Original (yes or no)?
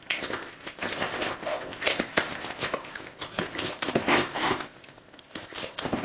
no